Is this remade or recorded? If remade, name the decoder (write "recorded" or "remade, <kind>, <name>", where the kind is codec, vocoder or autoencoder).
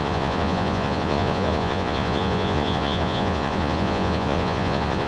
remade, vocoder, Vocos